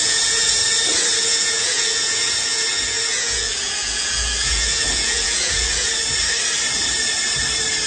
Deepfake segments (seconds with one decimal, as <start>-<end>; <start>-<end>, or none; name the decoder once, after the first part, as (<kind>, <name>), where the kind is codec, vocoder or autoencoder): 0.0-0.6 (vocoder, Vocos); 1.2-5.9